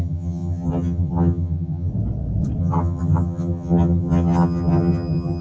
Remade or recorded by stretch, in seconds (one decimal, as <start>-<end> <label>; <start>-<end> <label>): 0.0-1.9 remade; 1.9-2.6 recorded; 2.6-5.4 remade